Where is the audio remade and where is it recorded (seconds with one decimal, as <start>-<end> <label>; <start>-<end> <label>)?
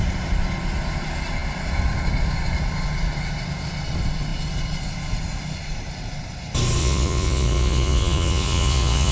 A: 0.0-6.8 recorded; 6.8-9.1 remade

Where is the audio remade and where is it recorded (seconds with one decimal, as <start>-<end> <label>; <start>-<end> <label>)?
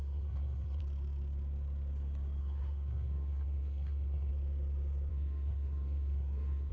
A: 0.0-0.8 remade; 0.8-2.4 recorded; 2.4-4.3 remade; 4.3-5.1 recorded; 5.1-6.7 remade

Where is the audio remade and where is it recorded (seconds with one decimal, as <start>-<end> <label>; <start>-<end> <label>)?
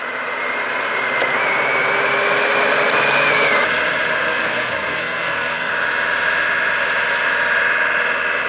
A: 0.0-4.3 recorded; 4.3-5.7 remade; 5.7-8.5 recorded